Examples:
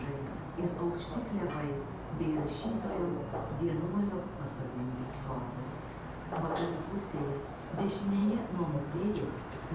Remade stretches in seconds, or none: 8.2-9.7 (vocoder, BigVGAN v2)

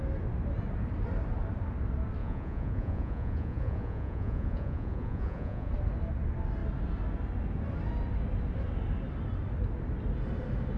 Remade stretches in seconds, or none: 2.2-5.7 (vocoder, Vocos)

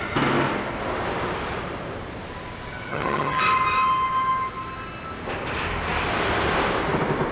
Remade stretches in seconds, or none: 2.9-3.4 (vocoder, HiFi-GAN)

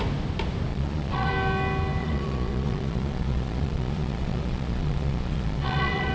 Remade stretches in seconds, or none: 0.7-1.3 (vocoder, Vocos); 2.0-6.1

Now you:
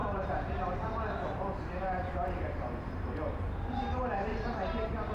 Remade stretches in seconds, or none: 0.0-3.1 (vocoder, BigVGAN v2); 4.3-5.1

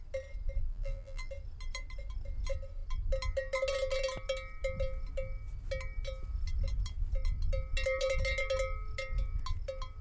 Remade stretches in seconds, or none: 0.7-1.3 (vocoder, BigVGAN v2)

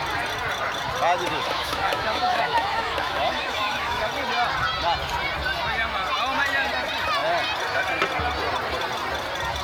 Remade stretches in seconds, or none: 1.3-4.1 (autoencoder, DAC-VAE)